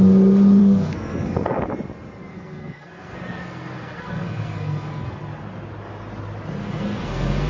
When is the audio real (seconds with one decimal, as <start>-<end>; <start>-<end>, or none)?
0.0-0.6; 1.6-2.3; 5.2-6.6